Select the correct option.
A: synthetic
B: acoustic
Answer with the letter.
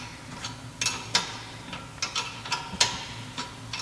B